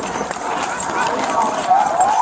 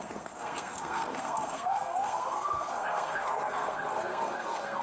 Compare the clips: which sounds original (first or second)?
first